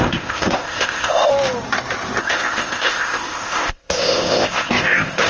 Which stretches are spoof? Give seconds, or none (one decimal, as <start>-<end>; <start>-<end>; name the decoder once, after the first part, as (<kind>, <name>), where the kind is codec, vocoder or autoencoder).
0.0-1.3 (codec, ZipCodec); 2.2-5.3